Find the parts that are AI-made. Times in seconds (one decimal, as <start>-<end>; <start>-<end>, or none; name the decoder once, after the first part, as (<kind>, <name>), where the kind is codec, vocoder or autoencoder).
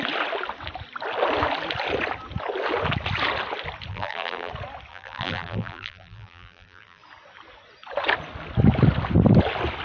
3.9-4.5 (vocoder, BigVGAN v2); 4.9-7.0